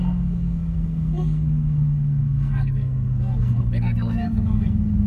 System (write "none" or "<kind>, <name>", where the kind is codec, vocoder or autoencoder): codec, SNAC